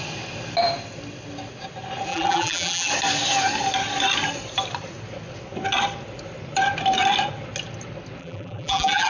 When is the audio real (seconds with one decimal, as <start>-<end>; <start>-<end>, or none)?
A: 0.0-2.1; 2.9-8.2

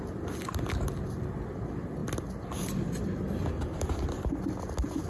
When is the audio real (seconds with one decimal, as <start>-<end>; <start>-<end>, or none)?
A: 0.0-5.1

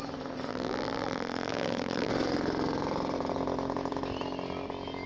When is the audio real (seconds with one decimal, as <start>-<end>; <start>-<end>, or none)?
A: 0.0-0.5; 2.1-5.1

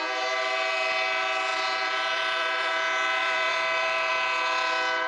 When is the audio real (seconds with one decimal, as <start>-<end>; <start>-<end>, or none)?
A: 0.0-1.5; 2.7-3.2; 4.1-5.1

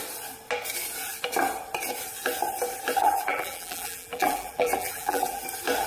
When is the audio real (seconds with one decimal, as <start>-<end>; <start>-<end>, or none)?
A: 0.0-3.0; 5.4-5.9

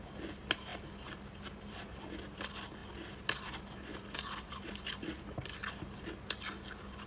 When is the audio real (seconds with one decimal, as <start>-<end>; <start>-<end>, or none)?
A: 0.0-7.1